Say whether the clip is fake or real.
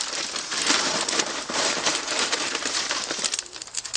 fake